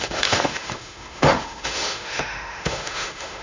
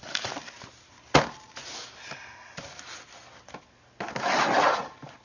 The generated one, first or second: first